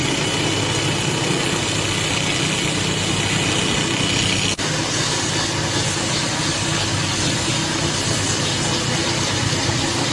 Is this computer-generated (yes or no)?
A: no